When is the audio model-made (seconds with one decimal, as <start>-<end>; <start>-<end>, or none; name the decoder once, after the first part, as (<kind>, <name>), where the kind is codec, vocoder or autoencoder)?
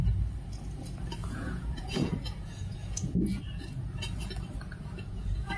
1.2-3.4 (vocoder, Vocos); 4.7-5.6